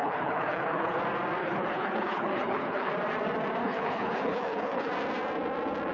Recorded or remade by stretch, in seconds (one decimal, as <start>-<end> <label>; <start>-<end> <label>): 0.0-1.0 remade; 1.0-1.4 recorded; 1.4-2.9 remade; 2.9-3.6 recorded; 3.6-4.9 remade; 4.9-5.9 recorded